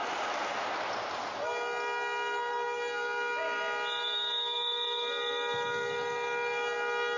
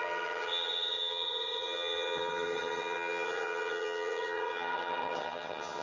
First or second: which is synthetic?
second